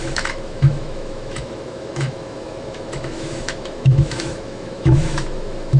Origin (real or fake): fake